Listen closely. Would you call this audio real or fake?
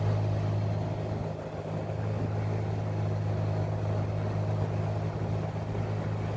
real